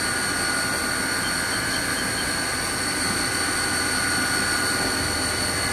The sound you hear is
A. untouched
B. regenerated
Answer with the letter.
A